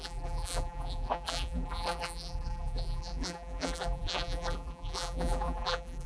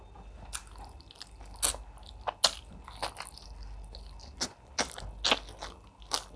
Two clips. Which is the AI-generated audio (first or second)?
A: first